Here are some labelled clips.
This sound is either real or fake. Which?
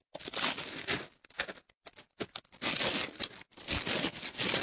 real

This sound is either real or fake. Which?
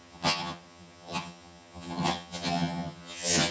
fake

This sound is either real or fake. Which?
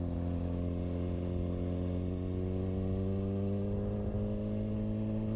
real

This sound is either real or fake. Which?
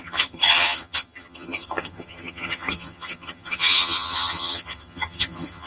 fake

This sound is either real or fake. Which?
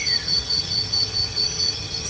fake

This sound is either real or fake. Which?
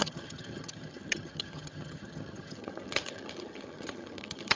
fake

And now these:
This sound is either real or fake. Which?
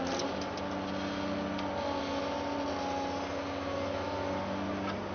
real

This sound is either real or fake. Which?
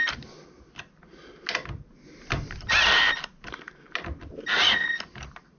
real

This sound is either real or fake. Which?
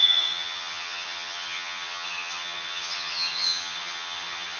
fake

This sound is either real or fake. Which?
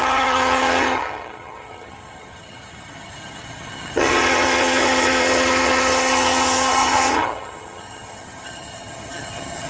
fake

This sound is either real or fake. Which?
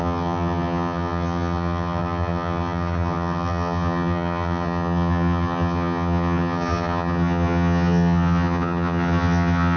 fake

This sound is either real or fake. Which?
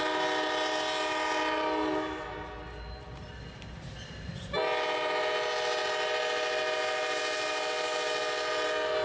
real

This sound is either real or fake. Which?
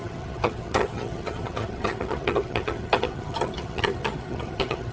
fake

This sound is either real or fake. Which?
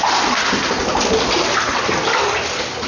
real